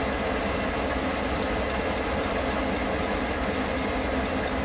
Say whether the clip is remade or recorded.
recorded